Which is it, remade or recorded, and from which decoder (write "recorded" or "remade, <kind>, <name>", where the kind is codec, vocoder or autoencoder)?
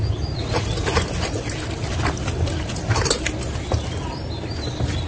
recorded